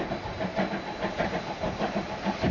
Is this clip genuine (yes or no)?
yes